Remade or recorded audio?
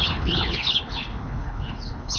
remade